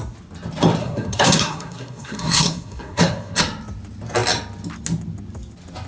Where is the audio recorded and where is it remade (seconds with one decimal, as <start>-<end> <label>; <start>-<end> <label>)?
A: 0.0-0.8 recorded; 0.8-3.4 remade; 3.4-5.9 recorded